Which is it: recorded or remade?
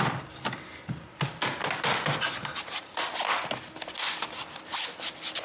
recorded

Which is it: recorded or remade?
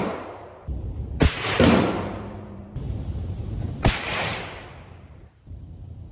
remade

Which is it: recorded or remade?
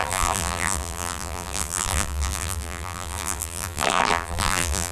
remade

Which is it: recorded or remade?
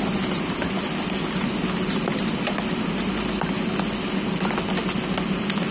recorded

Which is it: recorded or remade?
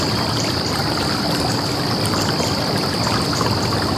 remade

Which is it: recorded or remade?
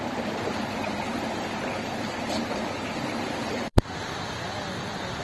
remade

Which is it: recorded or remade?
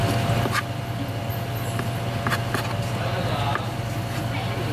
recorded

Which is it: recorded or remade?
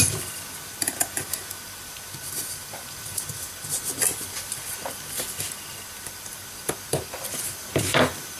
remade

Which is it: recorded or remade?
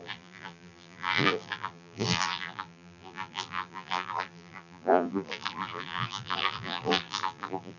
remade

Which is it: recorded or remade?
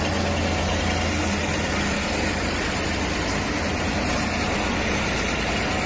recorded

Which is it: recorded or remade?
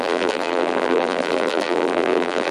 remade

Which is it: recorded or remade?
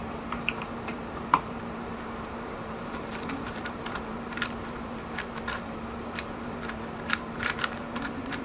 remade